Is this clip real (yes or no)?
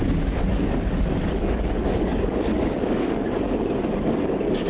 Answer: no